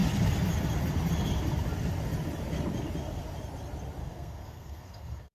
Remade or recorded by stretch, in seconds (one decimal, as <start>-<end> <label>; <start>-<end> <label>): 0.0-4.0 recorded; 4.0-5.3 remade